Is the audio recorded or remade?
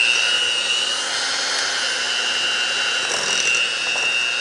recorded